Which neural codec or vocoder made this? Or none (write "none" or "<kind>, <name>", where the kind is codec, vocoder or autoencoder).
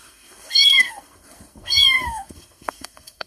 codec, SNAC